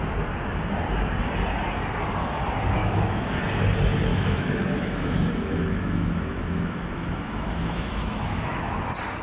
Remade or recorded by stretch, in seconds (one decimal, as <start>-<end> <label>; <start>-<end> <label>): 0.0-2.8 recorded; 2.8-3.4 remade; 3.4-4.1 recorded; 4.1-8.7 remade; 8.7-9.2 recorded